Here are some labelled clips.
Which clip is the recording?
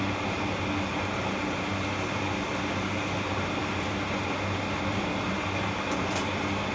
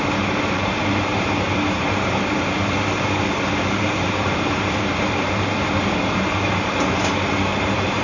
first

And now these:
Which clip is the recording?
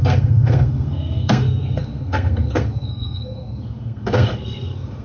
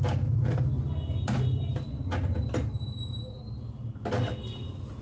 second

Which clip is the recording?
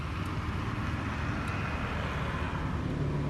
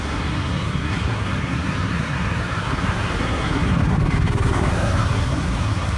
first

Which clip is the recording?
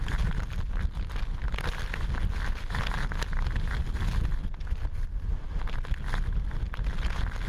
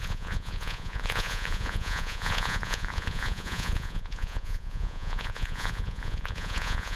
first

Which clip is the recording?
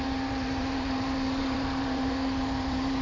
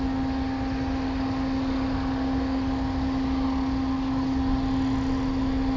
second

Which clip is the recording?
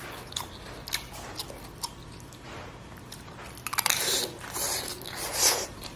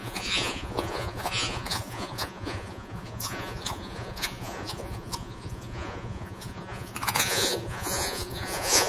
first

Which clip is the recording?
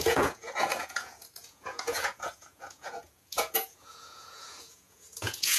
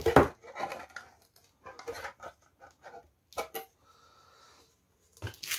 second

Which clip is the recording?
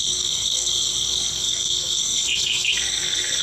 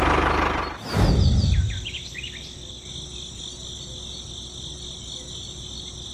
second